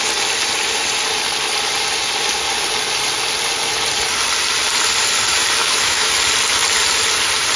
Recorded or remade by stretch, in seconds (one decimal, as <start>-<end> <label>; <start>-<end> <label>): 0.0-5.6 recorded; 5.6-6.1 remade; 6.1-7.6 recorded